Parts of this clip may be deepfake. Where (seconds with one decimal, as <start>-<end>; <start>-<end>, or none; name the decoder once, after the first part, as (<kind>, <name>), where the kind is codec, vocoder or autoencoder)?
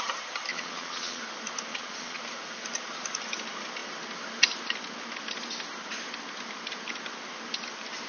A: 0.5-1.2 (vocoder, Vocos); 1.7-2.2